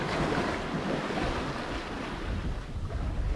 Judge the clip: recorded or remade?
recorded